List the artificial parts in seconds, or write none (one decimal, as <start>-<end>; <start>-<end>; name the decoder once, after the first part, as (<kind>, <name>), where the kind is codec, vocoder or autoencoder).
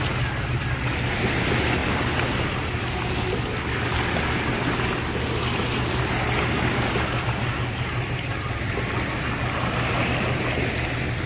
none